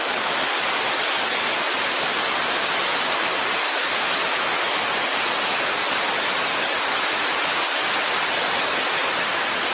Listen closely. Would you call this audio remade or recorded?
recorded